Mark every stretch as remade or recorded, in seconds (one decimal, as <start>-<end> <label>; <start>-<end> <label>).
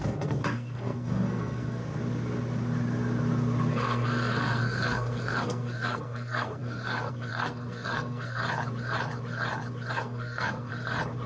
0.0-1.8 remade; 1.8-3.7 recorded; 3.7-8.4 remade; 8.4-9.9 recorded; 9.9-10.7 remade; 10.7-11.3 recorded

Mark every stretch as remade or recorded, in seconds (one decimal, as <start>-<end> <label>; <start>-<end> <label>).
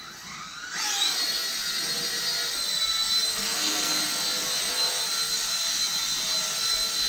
0.0-3.3 recorded; 3.3-4.0 remade; 4.0-7.1 recorded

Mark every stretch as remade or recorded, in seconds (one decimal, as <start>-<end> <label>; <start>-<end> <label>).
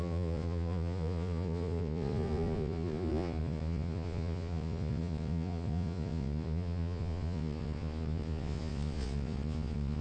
0.0-10.0 remade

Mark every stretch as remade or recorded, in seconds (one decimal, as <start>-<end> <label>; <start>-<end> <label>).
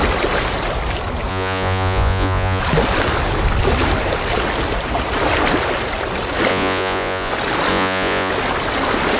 0.0-1.3 recorded; 1.3-2.6 remade; 2.6-6.5 recorded; 6.5-7.3 remade; 7.3-7.7 recorded; 7.7-8.3 remade; 8.3-9.2 recorded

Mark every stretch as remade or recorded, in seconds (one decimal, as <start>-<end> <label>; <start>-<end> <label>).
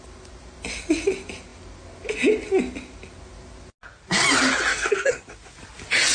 0.0-4.7 recorded; 4.7-5.2 remade; 5.2-6.1 recorded